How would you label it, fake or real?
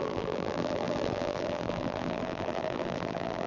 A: fake